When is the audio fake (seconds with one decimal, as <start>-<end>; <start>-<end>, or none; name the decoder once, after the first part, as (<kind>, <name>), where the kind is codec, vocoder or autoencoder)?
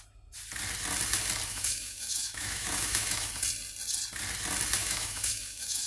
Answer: 1.5-3.3 (autoencoder, DAC-VAE); 4.8-5.9